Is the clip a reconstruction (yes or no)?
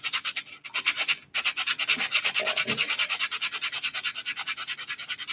no